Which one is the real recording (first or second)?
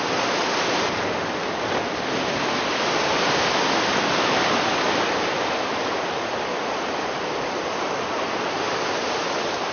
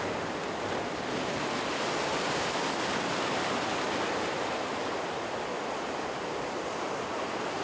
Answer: second